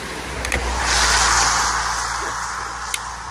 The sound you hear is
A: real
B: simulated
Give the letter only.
A